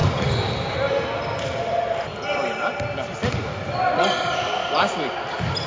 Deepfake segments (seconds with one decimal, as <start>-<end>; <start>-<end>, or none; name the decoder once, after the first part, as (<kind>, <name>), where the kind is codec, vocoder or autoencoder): none